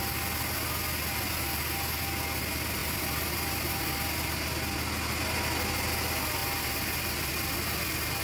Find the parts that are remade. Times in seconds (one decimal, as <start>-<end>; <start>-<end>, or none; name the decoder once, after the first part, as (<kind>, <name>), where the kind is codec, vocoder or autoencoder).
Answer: 2.8-4.3 (vocoder, BigVGAN v2)